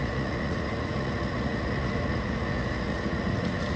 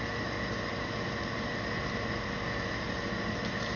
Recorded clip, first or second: second